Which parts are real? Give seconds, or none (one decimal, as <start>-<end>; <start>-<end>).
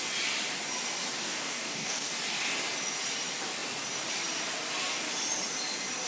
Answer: 0.0-1.2; 2.1-6.1